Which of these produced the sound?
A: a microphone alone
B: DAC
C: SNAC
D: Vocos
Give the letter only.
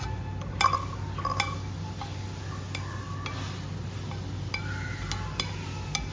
A